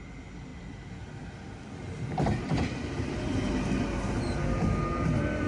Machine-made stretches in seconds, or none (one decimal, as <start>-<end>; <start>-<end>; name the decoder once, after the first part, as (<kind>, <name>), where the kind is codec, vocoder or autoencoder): 0.5-3.5 (vocoder, BigVGAN v2)